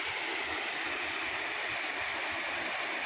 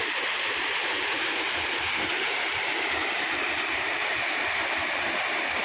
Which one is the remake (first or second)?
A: second